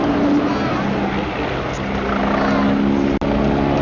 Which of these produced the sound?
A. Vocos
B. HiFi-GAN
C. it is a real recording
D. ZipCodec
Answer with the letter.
C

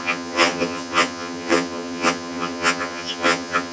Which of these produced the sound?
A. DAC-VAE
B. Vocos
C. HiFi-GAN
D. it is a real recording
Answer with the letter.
C